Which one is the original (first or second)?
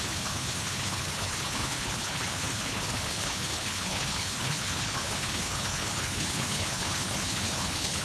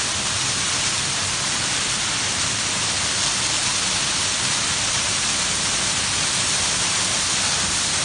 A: second